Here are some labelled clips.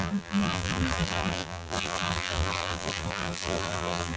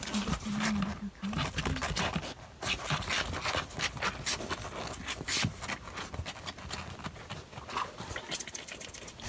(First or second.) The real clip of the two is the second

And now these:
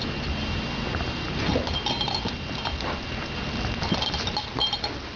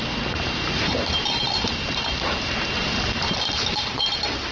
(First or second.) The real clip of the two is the first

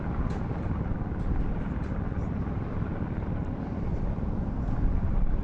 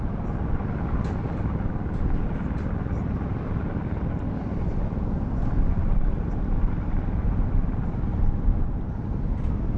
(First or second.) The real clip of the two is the second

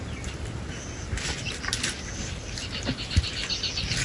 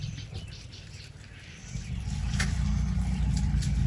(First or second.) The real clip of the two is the first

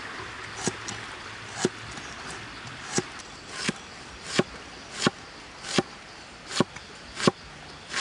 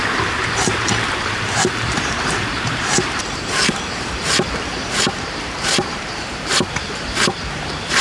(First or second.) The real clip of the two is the first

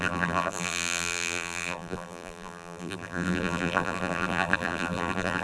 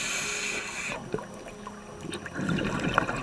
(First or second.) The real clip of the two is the second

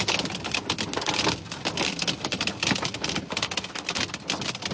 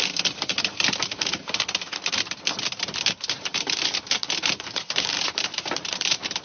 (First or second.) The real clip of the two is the first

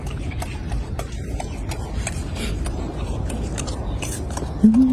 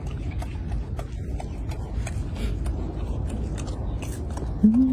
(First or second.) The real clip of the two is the second